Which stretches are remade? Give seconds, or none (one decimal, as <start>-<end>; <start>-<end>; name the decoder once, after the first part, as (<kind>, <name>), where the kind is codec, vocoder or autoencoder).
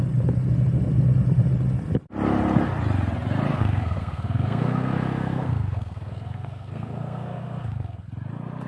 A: 3.5-8.1 (codec, SNAC)